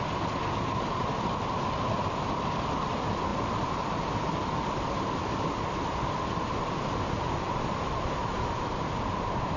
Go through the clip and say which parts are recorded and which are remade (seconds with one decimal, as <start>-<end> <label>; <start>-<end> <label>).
0.0-9.6 recorded